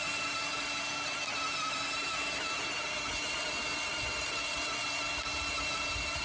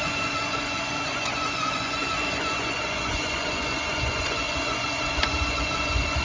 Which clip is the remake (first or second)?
second